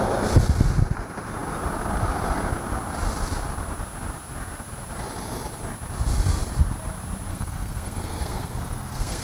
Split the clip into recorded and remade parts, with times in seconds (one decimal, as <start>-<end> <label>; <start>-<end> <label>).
0.0-7.3 recorded; 7.3-9.2 remade